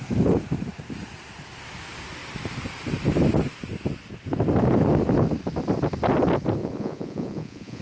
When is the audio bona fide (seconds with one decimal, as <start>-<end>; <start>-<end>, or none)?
0.0-6.6